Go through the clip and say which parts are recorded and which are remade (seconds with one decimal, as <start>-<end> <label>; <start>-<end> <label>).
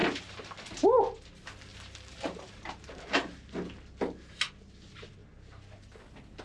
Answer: 0.0-0.7 remade; 0.7-1.7 recorded; 1.7-3.3 remade; 3.3-6.4 recorded